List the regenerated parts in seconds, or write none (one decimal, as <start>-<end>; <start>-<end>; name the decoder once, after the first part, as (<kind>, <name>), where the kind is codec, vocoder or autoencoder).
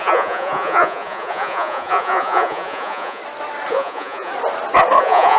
0.0-3.2 (vocoder, Vocos); 3.7-4.3; 5.0-5.4